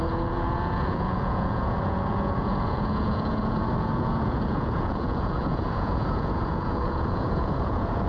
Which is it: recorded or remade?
remade